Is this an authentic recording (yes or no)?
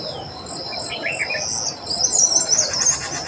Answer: yes